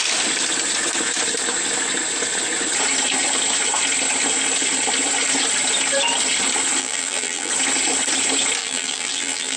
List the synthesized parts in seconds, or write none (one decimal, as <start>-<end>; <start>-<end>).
6.8-7.5; 8.6-9.6